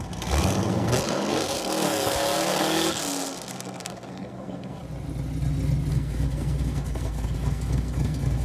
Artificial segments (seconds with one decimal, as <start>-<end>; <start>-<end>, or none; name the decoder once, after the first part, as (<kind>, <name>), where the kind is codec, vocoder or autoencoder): 0.0-4.8 (codec, SNAC); 5.9-8.4